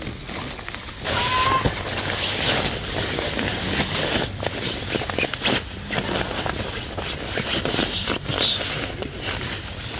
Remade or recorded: recorded